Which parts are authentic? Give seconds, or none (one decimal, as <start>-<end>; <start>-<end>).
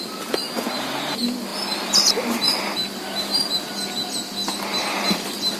0.0-5.6